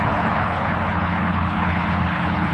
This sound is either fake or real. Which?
fake